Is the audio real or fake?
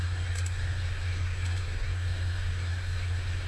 fake